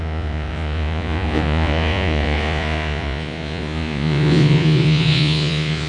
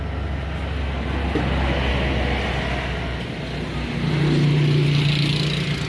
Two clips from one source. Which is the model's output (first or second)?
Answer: first